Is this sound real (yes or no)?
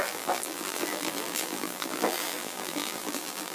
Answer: no